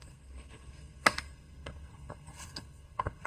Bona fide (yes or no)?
no